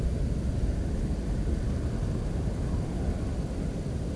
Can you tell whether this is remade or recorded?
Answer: recorded